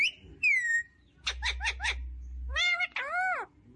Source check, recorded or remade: recorded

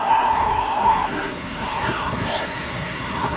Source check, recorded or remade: remade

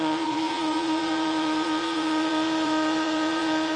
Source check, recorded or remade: remade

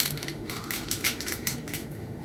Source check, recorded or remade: remade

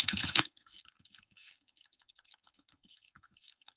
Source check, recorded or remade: remade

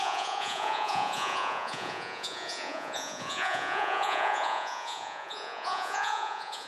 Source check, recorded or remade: remade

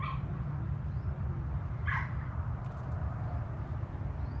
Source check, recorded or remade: recorded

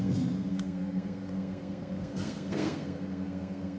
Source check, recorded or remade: remade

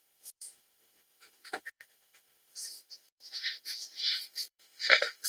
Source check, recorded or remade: remade